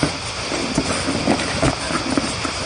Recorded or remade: recorded